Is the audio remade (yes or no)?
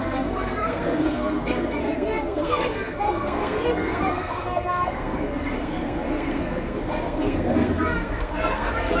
yes